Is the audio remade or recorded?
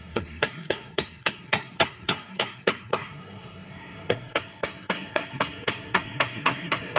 remade